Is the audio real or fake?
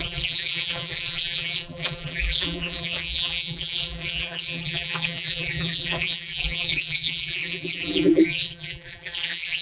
fake